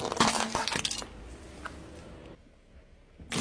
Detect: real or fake real